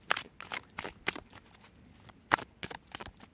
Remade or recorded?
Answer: recorded